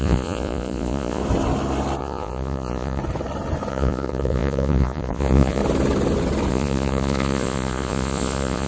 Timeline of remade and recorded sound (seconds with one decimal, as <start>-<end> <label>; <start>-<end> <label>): 0.0-1.2 remade; 1.2-2.0 recorded; 2.0-3.0 remade; 3.0-3.7 recorded; 3.7-5.6 remade; 5.6-6.5 recorded; 6.5-8.7 remade